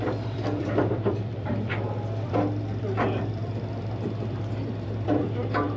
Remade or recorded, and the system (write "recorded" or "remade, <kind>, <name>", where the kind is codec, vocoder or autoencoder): remade, vocoder, BigVGAN v2